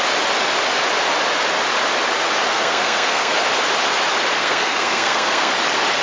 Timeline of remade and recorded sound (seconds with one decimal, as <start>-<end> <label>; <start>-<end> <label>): 0.0-2.5 recorded; 2.5-3.3 remade; 3.3-4.4 recorded; 4.4-5.5 remade; 5.5-6.0 recorded